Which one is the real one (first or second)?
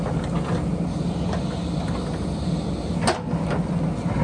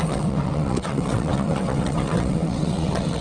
first